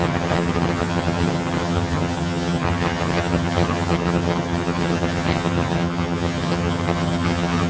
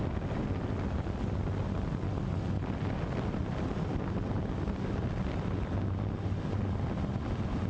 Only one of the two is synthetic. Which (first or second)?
first